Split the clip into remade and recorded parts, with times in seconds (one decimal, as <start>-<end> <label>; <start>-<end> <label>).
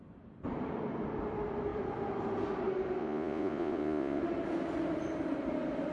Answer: 0.0-3.0 recorded; 3.0-4.2 remade; 4.2-5.9 recorded